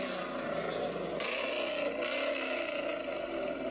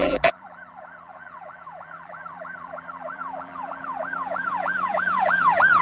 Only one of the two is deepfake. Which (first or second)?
second